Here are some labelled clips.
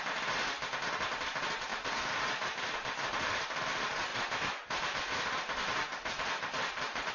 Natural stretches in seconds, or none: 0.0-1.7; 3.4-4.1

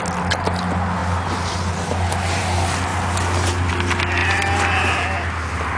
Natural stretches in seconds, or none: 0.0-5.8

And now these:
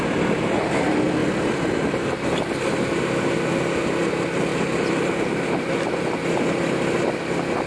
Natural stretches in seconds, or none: 0.0-1.2; 2.5-4.5; 5.7-7.7

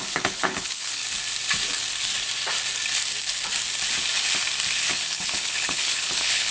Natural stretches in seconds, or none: 1.0-4.9

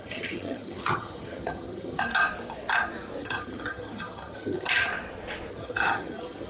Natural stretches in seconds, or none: 2.1-3.2; 4.9-5.5

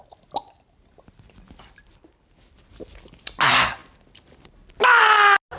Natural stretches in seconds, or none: 0.0-5.6

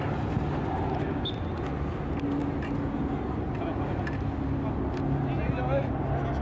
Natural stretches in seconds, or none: 0.0-6.4

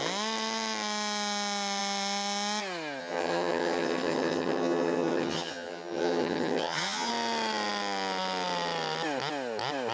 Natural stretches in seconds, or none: 0.0-3.0; 7.1-9.9